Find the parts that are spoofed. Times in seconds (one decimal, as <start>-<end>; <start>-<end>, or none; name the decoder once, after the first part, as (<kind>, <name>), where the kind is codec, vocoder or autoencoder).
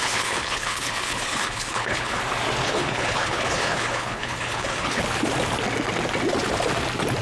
0.0-2.2 (codec, HILCodec); 2.6-5.0